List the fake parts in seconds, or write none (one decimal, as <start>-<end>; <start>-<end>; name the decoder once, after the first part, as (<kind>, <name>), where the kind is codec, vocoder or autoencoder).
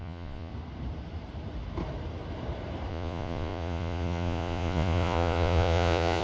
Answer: 0.0-0.5 (vocoder, Vocos); 2.9-6.2